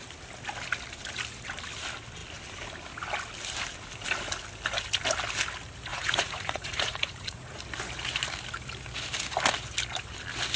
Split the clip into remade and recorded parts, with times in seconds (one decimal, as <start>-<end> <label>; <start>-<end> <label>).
0.0-5.9 recorded; 5.9-7.6 remade; 7.6-10.6 recorded